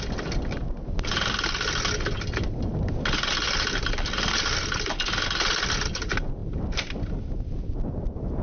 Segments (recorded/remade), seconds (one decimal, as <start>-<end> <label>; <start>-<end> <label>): 0.0-8.4 recorded